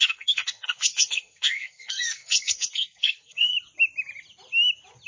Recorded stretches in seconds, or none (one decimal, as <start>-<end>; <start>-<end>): 3.5-5.1